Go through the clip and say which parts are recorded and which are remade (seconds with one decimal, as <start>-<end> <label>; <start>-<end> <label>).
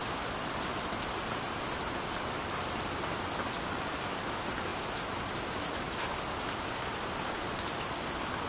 0.0-8.5 recorded